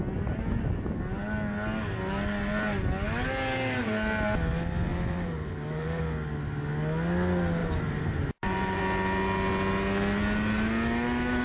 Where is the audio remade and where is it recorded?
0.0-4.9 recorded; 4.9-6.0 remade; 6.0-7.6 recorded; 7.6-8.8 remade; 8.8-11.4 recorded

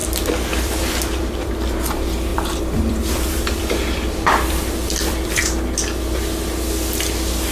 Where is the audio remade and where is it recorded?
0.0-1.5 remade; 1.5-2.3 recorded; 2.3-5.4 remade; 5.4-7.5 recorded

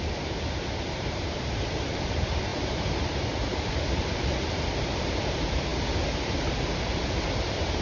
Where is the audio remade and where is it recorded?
0.0-7.8 remade

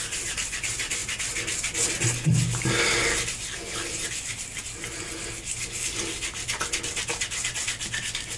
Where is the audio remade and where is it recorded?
0.0-8.4 recorded

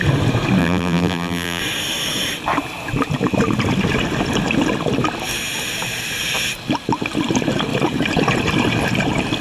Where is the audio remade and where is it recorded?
0.0-0.6 recorded; 0.6-1.6 remade; 1.6-9.4 recorded

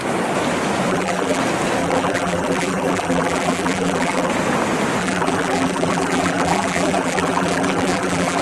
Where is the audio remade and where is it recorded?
0.0-0.9 recorded; 0.9-1.4 remade; 1.4-1.8 recorded; 1.8-4.3 remade; 4.3-5.0 recorded; 5.0-8.4 remade